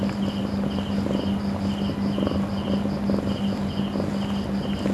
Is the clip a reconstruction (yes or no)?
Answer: no